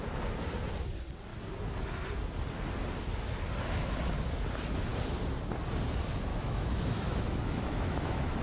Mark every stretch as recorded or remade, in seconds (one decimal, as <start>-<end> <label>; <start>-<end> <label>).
0.0-6.3 recorded; 6.3-8.4 remade